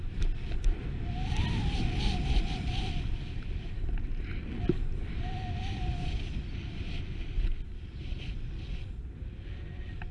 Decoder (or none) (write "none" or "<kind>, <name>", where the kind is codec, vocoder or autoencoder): none